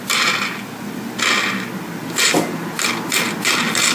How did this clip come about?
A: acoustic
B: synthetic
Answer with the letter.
A